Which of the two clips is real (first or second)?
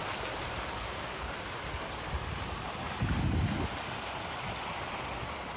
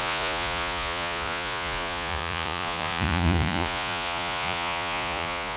first